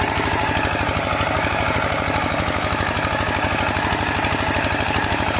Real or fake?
real